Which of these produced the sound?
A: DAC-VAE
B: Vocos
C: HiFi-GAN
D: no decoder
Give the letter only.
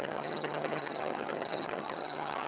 C